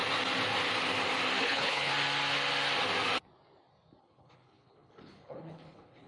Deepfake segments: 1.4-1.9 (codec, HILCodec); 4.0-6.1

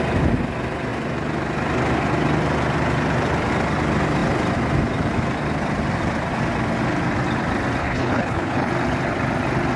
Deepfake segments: 7.8-8.7 (codec, HILCodec)

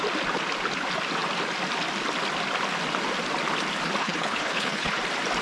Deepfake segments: 4.0-5.0 (codec, HILCodec)

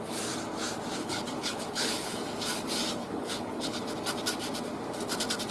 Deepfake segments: 1.0-2.2 (codec, HILCodec); 3.0-3.8

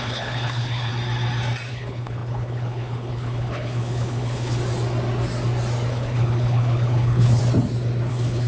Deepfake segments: 0.0-0.9 (codec, HILCodec); 1.7-4.6; 5.9-7.4; 8.1-8.5

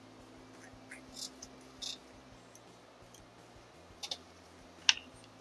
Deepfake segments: none